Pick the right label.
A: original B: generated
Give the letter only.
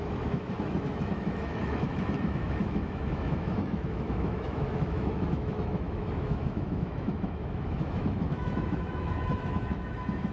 B